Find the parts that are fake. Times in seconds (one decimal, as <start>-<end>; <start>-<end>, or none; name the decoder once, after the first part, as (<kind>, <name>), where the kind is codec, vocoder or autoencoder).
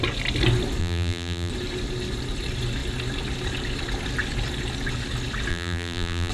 0.8-1.5 (vocoder, BigVGAN v2); 5.5-6.3